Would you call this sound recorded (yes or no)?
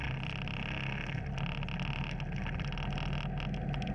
yes